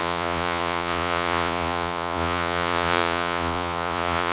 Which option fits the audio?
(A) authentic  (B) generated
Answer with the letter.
B